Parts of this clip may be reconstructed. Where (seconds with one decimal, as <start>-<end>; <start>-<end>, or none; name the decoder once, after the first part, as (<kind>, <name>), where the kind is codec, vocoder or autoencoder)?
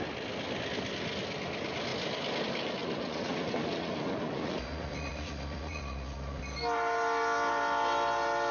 2.8-6.4 (vocoder, Vocos)